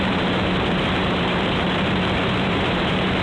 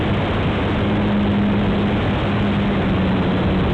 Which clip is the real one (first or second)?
second